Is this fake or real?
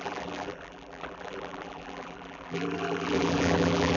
fake